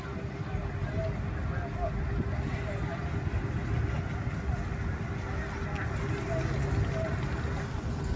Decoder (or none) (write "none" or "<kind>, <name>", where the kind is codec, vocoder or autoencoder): none